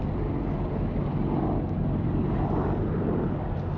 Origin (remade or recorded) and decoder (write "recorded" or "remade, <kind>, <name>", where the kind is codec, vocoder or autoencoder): recorded